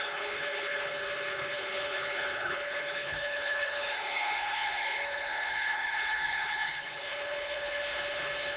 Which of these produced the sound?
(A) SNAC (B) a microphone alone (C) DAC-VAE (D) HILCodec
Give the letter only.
D